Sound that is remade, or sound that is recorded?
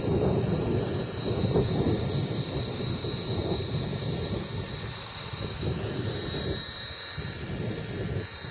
recorded